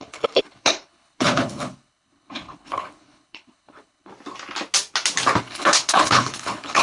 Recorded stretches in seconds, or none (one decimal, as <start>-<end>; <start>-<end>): 4.1-5.4